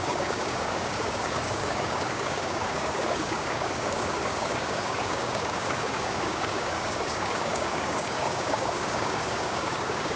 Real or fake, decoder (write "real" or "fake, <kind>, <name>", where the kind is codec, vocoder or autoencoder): fake, codec, DAC